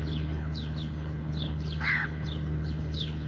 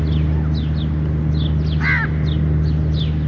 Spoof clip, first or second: first